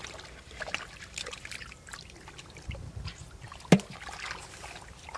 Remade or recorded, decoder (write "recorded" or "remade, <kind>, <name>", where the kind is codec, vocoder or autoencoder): recorded